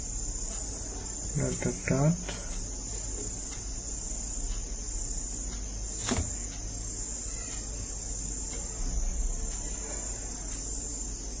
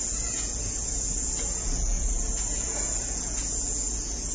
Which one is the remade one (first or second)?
second